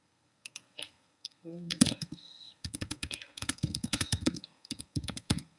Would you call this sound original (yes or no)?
no